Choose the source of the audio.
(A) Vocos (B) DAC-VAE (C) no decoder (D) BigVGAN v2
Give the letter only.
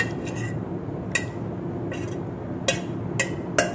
C